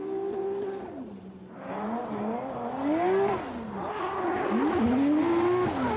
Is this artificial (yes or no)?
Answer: no